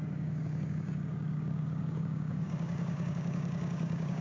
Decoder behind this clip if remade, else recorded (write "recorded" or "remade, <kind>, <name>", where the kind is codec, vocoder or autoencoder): remade, codec, DAC